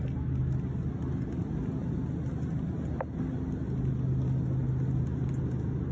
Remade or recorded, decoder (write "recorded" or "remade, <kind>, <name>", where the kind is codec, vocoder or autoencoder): recorded